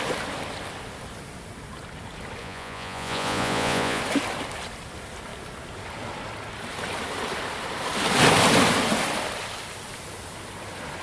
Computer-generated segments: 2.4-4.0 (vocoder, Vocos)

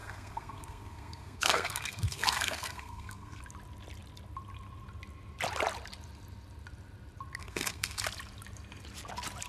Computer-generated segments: 0.0-3.4 (codec, SNAC); 7.4-8.0

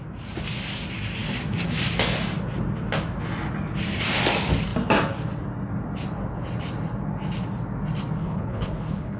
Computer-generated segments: 8.2-9.2 (codec, HILCodec)

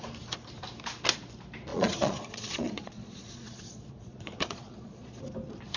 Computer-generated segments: 1.7-5.2 (vocoder, Vocos)

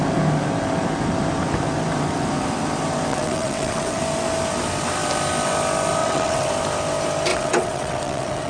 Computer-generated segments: 3.1-4.0 (vocoder, WaveNeXt); 6.0-6.5; 7.3-8.5